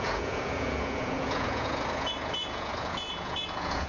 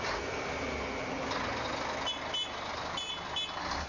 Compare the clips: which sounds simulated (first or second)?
first